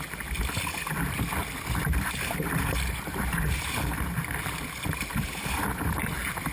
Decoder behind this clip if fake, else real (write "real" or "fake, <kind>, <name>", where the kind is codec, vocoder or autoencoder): real